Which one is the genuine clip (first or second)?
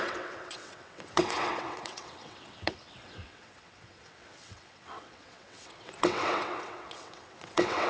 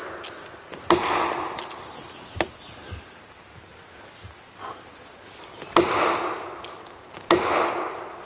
second